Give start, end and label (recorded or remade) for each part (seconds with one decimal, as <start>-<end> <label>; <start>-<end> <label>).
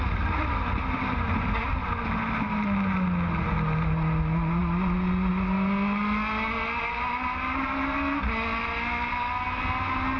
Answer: 0.0-10.2 recorded